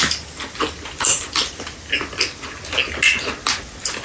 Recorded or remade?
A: recorded